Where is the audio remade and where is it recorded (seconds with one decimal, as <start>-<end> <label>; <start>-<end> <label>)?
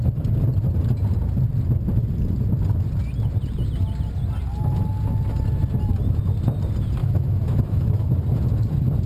0.0-7.0 recorded; 7.0-8.1 remade; 8.1-9.1 recorded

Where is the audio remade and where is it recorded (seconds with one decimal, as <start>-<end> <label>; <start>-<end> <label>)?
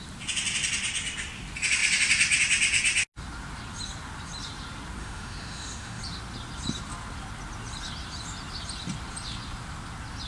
0.0-5.0 recorded; 5.0-6.0 remade; 6.0-10.3 recorded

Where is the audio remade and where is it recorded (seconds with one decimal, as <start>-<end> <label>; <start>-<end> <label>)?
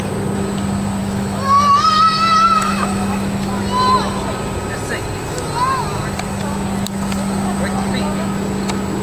0.0-1.0 recorded; 1.0-3.6 remade; 3.6-9.0 recorded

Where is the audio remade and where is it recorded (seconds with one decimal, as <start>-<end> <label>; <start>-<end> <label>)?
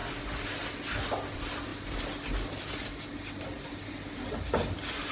0.0-5.1 recorded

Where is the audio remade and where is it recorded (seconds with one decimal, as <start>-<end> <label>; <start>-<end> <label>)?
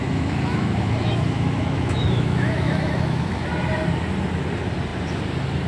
0.0-3.4 remade; 3.4-5.7 recorded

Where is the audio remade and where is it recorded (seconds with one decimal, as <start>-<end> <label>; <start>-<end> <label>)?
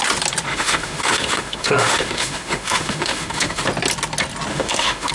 0.0-0.5 recorded; 0.5-3.6 remade; 3.6-4.5 recorded; 4.5-5.1 remade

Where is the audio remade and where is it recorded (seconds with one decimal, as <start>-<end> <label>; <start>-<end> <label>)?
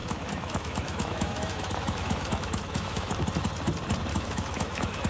0.0-3.1 remade; 3.1-4.1 recorded; 4.1-5.1 remade